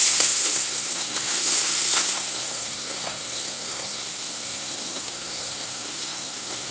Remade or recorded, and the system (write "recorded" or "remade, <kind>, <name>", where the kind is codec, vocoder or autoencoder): remade, codec, SNAC